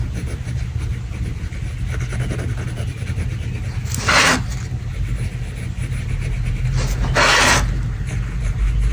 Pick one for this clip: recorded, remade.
recorded